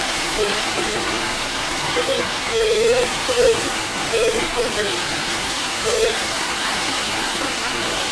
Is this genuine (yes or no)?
no